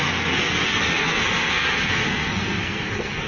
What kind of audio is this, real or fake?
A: fake